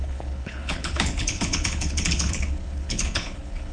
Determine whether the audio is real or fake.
fake